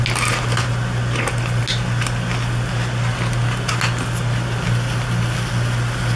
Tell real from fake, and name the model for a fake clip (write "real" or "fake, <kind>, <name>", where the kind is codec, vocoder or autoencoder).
real